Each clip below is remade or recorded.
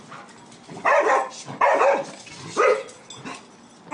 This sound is recorded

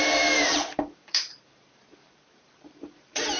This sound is remade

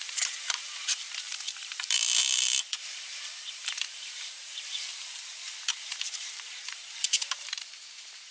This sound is remade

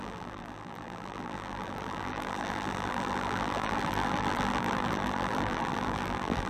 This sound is remade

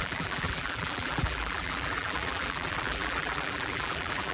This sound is remade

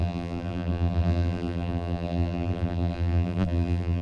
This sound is remade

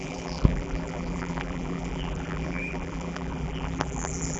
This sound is remade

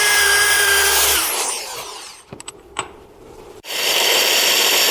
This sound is remade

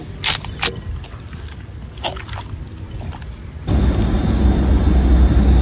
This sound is recorded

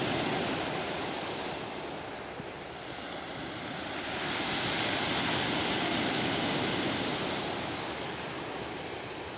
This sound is recorded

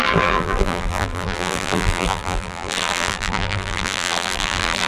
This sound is remade